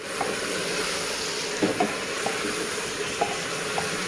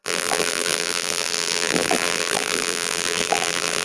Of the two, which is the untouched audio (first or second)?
first